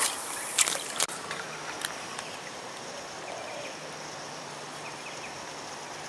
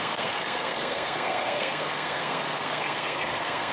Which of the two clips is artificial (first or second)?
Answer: second